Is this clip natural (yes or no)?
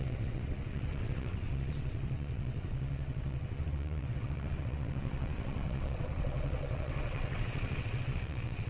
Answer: no